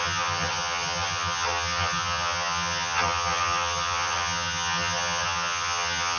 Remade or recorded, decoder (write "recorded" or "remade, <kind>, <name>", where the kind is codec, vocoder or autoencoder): remade, vocoder, HiFi-GAN